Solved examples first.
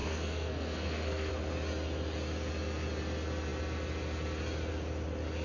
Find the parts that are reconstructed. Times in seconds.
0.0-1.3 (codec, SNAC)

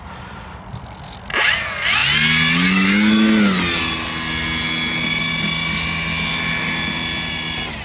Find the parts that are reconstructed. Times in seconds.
none